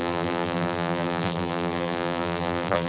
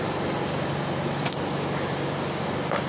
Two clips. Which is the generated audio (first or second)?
first